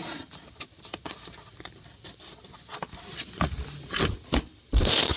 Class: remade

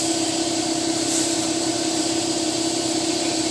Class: remade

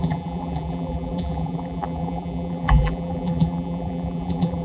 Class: remade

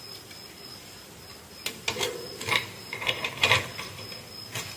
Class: recorded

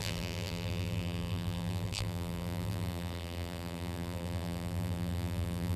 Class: remade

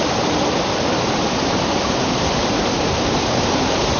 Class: remade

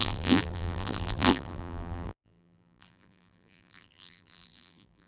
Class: remade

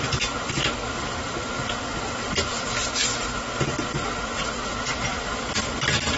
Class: recorded